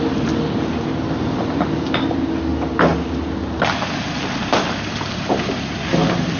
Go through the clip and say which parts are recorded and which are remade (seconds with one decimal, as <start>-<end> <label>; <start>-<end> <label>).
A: 0.0-6.4 recorded